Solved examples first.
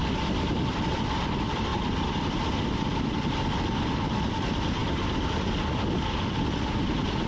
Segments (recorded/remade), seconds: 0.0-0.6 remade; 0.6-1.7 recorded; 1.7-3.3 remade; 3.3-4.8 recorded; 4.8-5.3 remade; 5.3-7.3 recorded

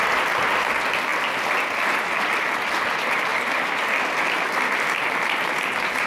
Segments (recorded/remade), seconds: 0.0-6.1 recorded

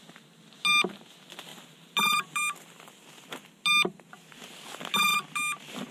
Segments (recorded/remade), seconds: 0.0-5.9 recorded